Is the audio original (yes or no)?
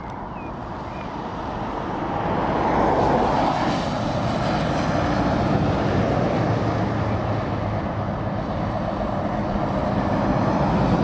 yes